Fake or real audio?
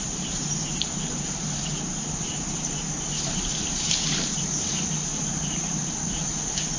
fake